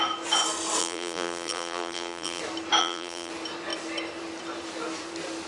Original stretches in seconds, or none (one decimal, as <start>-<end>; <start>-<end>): 0.0-0.8; 2.4-2.8; 3.3-5.5